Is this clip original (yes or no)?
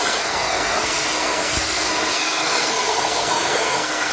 no